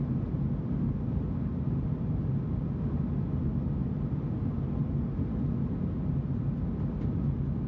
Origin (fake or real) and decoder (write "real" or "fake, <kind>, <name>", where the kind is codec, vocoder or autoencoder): real